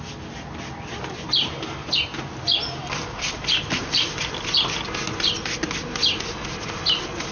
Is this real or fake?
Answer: real